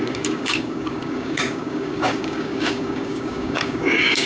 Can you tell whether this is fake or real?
fake